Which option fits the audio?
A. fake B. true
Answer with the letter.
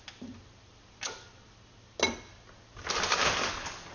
B